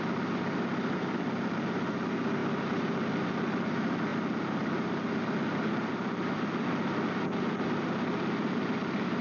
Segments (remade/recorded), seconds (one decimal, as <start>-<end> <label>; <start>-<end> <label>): 0.0-9.2 recorded